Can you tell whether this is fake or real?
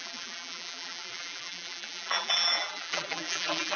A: fake